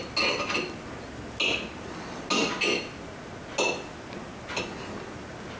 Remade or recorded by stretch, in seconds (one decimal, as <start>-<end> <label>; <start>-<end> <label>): 0.0-5.6 recorded